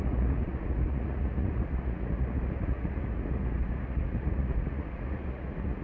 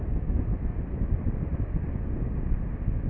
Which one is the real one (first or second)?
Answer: second